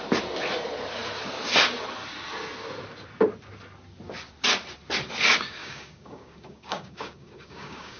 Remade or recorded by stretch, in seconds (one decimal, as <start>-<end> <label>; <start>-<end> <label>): 0.0-5.6 recorded; 5.6-8.0 remade